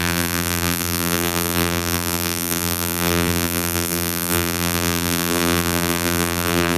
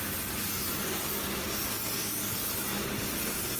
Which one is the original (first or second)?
second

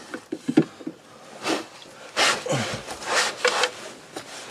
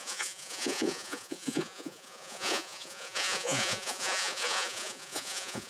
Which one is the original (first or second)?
first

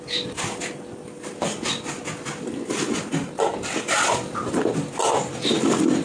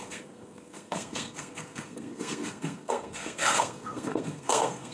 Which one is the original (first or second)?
first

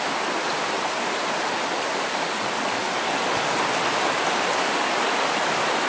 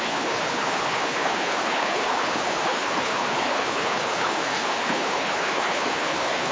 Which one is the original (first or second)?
first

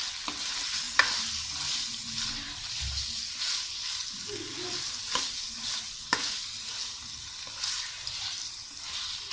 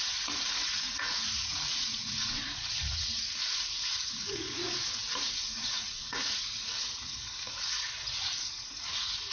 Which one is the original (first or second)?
first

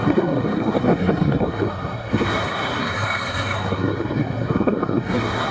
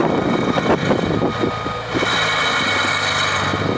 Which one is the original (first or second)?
second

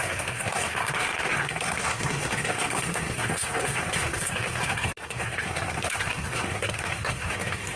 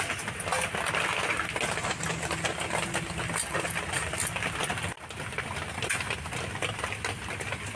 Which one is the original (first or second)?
second